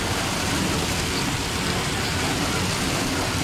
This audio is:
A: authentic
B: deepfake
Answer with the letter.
B